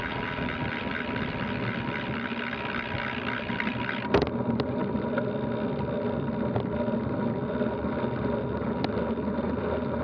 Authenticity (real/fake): real